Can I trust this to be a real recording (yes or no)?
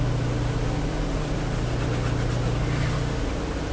yes